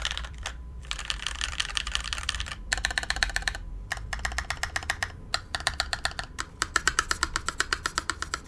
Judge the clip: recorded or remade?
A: remade